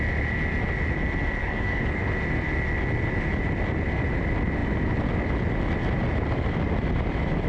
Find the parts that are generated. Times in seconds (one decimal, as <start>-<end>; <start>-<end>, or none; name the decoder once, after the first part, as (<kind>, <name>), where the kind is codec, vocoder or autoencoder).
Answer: 1.4-2.0 (codec, DAC)